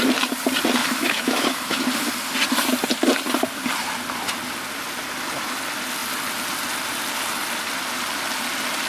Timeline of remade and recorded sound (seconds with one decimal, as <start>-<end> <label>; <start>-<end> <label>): 0.0-0.8 recorded; 0.8-1.8 remade; 1.8-8.9 recorded